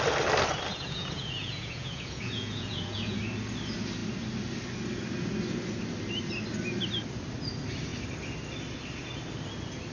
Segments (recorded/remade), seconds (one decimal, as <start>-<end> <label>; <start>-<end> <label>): 0.0-0.7 recorded; 0.7-3.2 remade; 3.2-9.9 recorded